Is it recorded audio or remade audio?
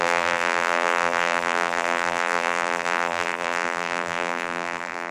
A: remade